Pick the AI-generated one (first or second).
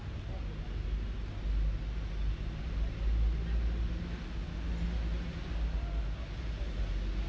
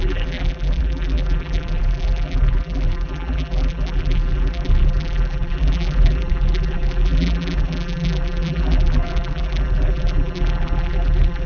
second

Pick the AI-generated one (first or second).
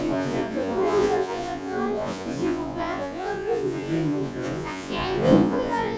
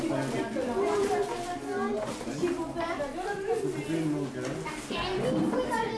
first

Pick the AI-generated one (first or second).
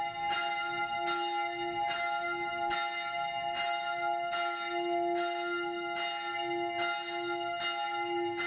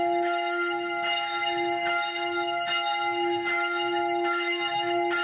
second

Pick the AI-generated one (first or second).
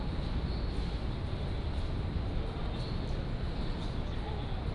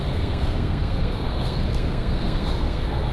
second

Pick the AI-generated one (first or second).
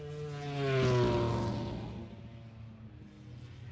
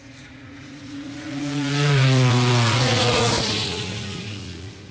second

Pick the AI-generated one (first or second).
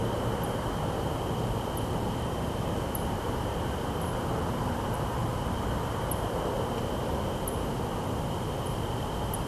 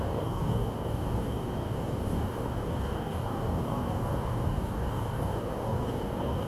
second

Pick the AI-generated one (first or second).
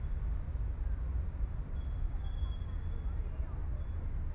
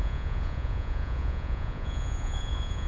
second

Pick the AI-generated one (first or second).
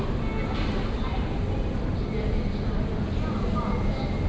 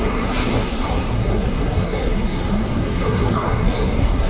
second